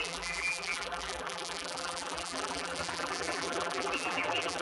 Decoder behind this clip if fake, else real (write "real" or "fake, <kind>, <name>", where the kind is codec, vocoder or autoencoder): fake, vocoder, BigVGAN v2